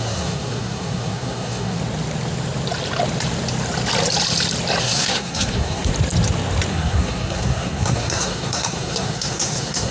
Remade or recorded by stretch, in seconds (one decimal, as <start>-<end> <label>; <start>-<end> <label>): 0.0-1.8 remade; 1.8-4.8 recorded; 4.8-5.9 remade; 5.9-6.7 recorded; 6.7-9.9 remade